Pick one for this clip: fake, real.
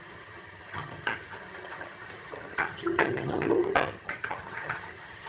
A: fake